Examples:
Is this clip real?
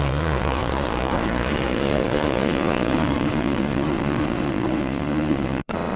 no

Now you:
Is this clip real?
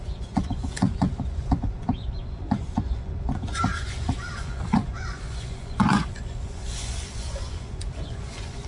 no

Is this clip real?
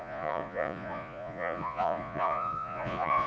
no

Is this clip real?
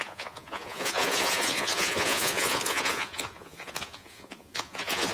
no